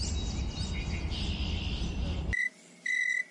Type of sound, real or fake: real